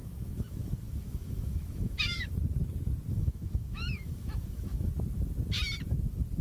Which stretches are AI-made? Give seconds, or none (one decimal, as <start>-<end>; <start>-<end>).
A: 0.0-2.3; 3.1-4.9